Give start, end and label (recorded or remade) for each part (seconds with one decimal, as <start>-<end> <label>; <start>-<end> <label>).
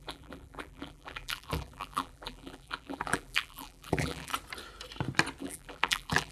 0.0-4.3 remade; 4.3-5.4 recorded; 5.4-6.3 remade